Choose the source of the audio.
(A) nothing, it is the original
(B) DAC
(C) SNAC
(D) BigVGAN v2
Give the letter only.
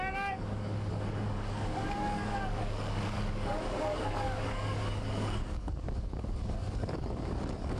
B